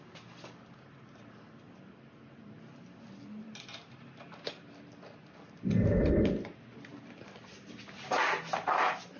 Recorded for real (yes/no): yes